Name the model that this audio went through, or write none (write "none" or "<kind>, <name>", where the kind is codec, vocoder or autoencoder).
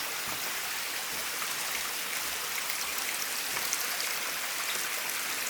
none